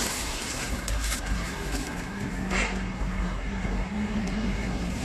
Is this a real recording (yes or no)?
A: no